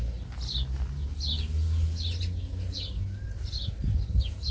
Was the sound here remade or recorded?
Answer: recorded